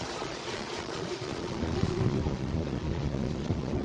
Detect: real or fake fake